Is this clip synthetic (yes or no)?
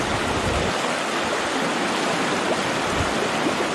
no